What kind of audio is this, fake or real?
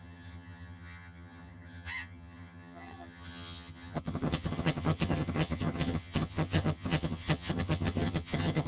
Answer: fake